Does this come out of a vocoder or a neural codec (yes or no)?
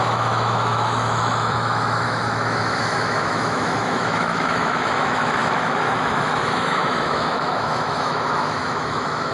yes